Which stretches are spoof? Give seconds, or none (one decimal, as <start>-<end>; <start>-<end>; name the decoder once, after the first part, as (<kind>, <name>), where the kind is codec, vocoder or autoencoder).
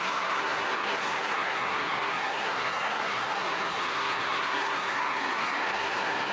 0.0-6.3 (codec, SNAC)